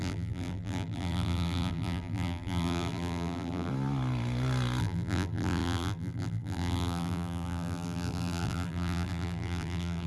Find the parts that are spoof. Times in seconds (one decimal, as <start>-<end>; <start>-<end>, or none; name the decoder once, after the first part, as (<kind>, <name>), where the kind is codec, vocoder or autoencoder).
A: 0.0-3.7 (vocoder, BigVGAN v2); 4.8-10.1